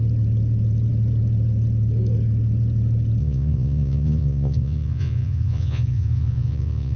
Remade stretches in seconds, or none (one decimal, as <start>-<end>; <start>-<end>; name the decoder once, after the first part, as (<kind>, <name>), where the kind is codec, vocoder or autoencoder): 3.2-7.0 (vocoder, Vocos)